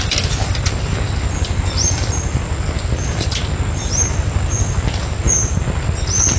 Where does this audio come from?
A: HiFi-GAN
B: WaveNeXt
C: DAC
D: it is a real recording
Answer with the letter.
D